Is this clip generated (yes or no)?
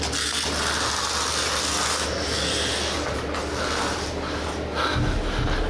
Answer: no